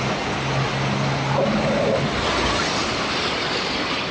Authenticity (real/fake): real